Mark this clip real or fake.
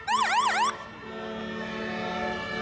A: real